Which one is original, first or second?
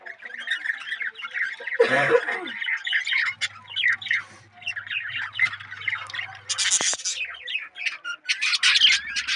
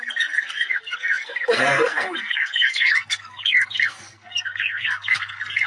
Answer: first